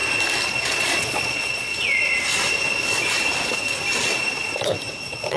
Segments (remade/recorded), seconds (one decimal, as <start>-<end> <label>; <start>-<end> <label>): 0.0-0.6 recorded; 0.6-1.7 remade; 1.7-4.9 recorded; 4.9-5.4 remade